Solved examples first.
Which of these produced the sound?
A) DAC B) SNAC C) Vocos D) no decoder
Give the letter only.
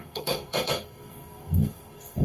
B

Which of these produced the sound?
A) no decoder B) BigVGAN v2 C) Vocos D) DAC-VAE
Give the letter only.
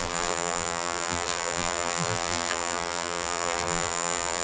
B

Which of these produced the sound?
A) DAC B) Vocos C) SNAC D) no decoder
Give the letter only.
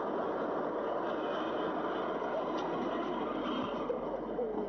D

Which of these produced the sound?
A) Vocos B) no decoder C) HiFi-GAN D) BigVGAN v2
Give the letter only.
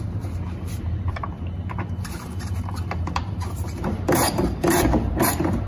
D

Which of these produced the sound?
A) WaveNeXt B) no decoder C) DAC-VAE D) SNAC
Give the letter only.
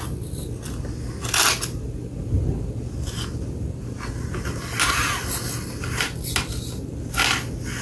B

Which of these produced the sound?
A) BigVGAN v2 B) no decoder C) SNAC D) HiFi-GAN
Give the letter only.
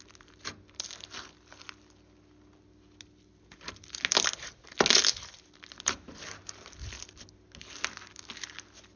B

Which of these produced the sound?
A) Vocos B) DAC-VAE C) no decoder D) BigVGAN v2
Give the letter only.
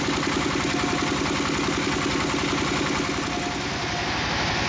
C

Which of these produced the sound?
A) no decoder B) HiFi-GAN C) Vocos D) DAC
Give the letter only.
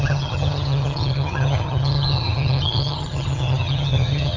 B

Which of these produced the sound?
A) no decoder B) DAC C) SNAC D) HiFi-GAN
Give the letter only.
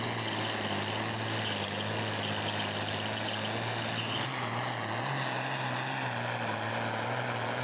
A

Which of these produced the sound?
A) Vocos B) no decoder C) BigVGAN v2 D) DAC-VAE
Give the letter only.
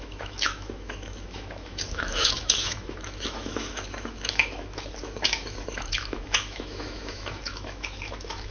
D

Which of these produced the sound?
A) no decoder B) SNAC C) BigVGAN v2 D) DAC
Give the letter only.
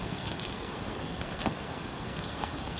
B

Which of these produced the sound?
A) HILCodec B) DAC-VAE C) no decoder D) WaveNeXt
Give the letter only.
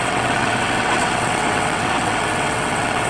D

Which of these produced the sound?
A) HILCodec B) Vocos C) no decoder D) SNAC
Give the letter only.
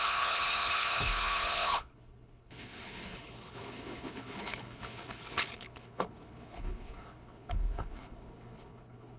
A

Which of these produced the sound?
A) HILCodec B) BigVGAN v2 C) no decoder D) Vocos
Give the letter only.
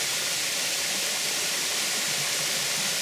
B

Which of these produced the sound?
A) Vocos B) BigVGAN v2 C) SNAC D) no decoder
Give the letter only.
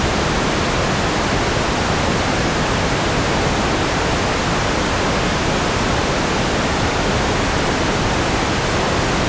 D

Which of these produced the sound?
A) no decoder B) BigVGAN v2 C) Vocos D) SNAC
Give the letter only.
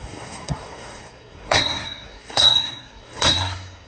D